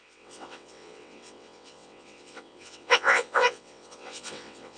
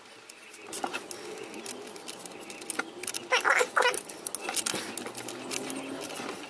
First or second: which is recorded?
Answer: second